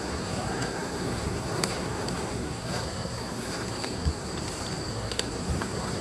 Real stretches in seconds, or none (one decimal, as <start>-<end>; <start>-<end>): 4.3-4.9